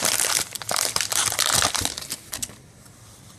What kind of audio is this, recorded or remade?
remade